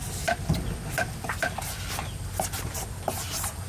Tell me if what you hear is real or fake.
fake